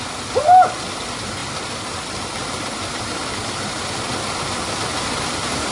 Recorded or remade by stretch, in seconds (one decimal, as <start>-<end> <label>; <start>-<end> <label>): 0.0-1.4 recorded; 1.4-4.7 remade; 4.7-5.7 recorded